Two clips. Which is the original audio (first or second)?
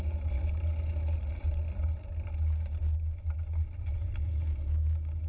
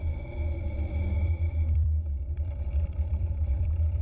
first